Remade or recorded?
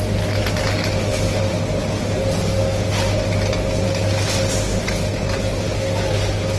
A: recorded